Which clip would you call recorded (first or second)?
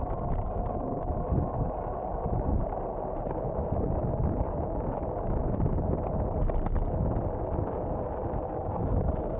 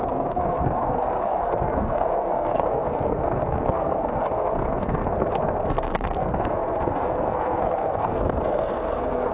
first